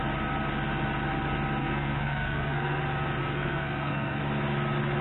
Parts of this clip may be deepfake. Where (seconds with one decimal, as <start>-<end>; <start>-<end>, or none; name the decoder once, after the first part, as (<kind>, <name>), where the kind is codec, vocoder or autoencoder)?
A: 1.6-2.8 (codec, SNAC); 3.2-4.2